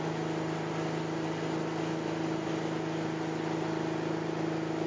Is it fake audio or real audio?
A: real